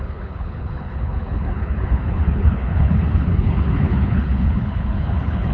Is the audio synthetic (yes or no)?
yes